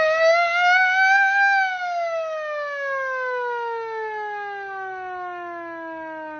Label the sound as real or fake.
real